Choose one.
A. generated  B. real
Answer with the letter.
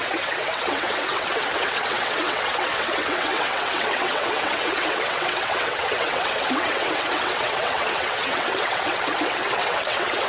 A